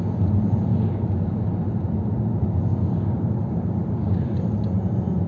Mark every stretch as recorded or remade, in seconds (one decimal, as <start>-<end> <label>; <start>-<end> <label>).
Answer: 0.0-5.3 recorded

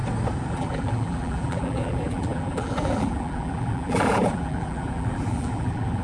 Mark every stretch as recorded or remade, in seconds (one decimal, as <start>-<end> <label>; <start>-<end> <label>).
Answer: 0.0-0.5 recorded; 0.5-6.0 remade

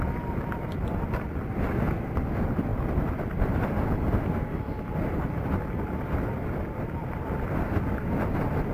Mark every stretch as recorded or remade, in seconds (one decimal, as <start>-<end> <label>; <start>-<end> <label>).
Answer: 0.0-8.7 recorded